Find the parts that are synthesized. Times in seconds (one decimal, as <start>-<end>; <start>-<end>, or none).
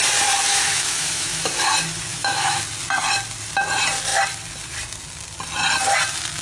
0.5-1.5; 2.1-2.6